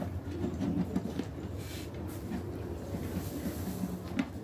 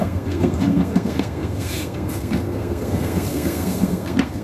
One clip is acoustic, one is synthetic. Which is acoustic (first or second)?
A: first